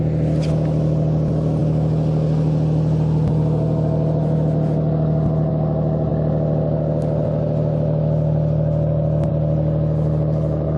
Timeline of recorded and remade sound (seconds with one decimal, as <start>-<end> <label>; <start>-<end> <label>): 0.0-10.8 recorded